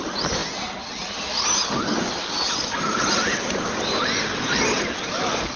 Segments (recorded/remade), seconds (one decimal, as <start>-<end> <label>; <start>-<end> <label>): 0.0-5.6 recorded